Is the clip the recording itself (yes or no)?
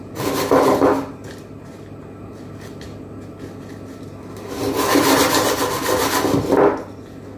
yes